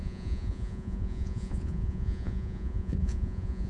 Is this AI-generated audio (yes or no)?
yes